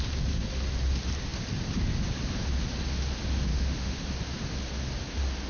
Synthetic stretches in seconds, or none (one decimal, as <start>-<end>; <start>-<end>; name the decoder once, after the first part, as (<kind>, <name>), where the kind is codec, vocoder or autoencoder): 3.5-4.1 (autoencoder, DAC-VAE)